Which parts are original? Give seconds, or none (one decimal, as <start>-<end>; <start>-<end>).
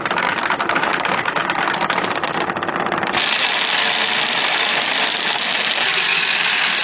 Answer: 0.0-6.8